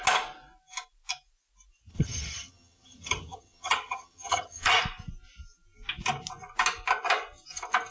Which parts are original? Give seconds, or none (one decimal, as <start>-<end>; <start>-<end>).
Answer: 0.0-1.9; 4.8-7.9